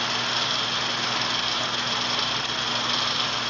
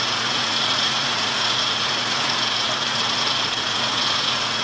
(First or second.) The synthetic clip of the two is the second